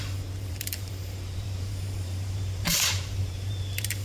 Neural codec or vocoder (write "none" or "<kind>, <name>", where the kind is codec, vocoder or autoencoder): vocoder, BigVGAN v2